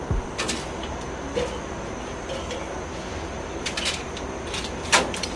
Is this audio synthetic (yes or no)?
no